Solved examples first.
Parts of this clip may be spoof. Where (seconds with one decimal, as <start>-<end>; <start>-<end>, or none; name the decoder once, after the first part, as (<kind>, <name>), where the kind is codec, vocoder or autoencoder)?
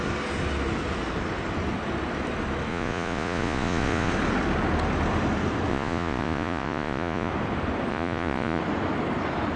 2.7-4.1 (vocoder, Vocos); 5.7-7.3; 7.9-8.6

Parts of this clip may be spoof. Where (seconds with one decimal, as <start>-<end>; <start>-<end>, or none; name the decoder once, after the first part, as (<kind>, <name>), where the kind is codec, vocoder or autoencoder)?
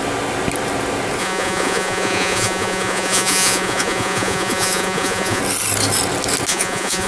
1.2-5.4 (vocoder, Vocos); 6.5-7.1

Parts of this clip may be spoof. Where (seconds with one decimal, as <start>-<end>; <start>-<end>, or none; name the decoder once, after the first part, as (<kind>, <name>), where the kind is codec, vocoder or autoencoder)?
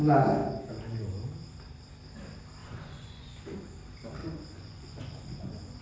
2.6-3.4 (vocoder, Vocos); 4.2-5.8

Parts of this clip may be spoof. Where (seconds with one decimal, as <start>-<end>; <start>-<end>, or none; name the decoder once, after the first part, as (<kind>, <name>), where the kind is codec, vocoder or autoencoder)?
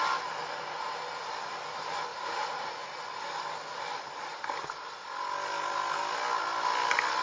2.1-3.0 (vocoder, Vocos)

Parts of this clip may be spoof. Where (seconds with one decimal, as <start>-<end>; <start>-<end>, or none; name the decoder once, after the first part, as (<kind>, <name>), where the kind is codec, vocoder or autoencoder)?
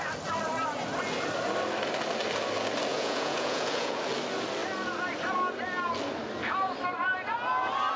2.9-4.0 (vocoder, Vocos)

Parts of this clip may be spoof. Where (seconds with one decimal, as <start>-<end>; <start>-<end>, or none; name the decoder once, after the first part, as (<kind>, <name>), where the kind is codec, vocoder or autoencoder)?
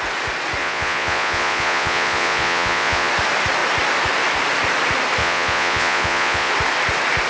0.6-3.1 (vocoder, Vocos); 5.2-6.5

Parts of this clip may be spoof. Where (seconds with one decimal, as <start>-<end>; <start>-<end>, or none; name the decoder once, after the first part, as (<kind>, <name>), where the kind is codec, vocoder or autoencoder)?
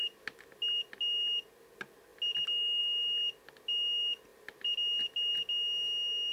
none